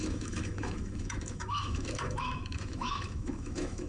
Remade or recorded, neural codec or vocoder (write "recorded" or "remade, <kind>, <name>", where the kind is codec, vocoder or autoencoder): remade, autoencoder, DAC-VAE